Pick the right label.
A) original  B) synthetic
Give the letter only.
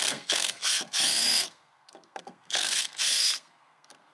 B